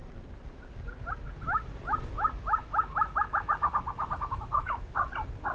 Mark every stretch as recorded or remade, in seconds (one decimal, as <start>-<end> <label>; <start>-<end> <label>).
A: 0.0-2.6 recorded; 2.6-5.1 remade; 5.1-5.5 recorded